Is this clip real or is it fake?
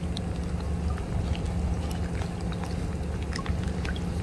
real